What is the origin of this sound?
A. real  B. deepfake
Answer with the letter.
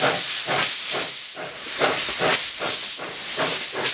A